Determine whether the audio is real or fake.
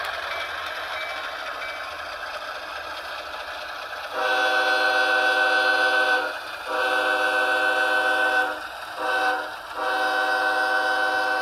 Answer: real